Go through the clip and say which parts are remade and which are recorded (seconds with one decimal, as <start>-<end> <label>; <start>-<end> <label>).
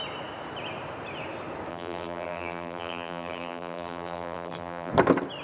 0.0-1.7 recorded; 1.7-4.9 remade; 4.9-5.4 recorded